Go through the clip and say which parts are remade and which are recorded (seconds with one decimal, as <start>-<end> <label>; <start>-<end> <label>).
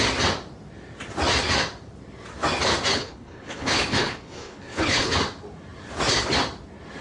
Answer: 0.0-2.9 recorded; 2.9-5.1 remade; 5.1-7.0 recorded